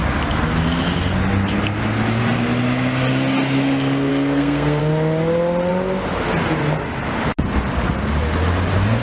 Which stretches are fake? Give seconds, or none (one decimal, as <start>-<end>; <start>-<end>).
4.1-4.8